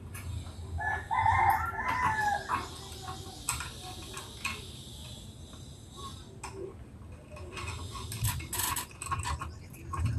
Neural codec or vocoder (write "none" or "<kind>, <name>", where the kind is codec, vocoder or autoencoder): none